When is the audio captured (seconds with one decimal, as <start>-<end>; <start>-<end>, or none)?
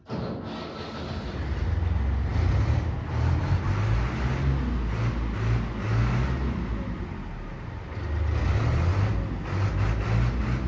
0.0-10.7